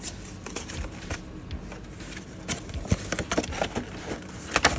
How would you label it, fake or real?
real